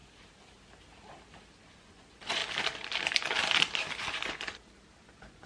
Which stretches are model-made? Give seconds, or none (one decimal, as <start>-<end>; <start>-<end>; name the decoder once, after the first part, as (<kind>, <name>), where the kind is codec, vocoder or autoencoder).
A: 1.6-2.4 (vocoder, Vocos); 5.1-5.5